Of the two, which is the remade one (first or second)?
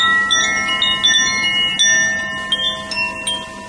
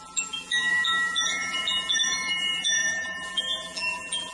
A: second